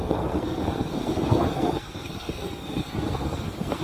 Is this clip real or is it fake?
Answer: fake